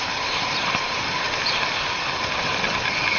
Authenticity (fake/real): real